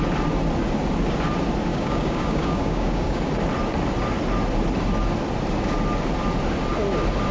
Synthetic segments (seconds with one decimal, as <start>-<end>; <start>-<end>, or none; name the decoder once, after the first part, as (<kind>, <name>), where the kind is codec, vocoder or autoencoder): 1.7-3.2 (codec, DAC)